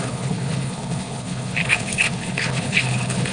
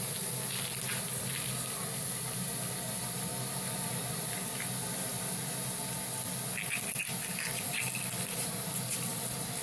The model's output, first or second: first